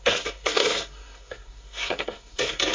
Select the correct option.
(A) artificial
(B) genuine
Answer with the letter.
A